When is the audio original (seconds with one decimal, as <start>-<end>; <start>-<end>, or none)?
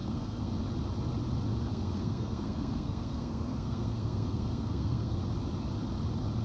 0.5-1.7; 5.2-6.4